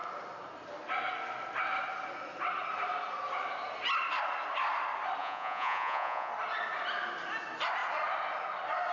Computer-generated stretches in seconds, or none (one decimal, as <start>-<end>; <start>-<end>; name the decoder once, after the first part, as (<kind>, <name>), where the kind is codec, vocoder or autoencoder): 5.2-6.3 (vocoder, Vocos)